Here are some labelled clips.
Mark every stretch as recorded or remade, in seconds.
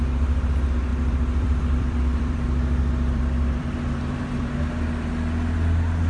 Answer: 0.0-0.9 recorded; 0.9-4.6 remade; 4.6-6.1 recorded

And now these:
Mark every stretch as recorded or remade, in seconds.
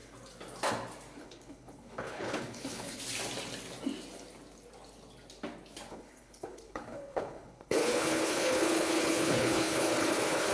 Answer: 0.0-1.2 recorded; 1.2-3.0 remade; 3.0-5.9 recorded; 5.9-10.5 remade